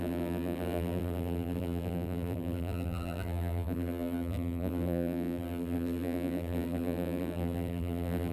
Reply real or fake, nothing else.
fake